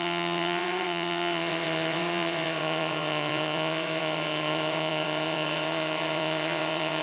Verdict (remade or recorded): remade